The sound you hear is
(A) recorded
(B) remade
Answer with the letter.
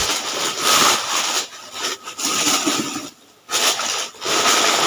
A